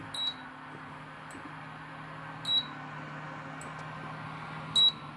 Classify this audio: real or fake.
real